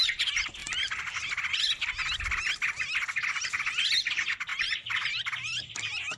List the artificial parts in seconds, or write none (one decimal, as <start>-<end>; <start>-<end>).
0.6-1.6; 2.0-3.2; 4.5-5.7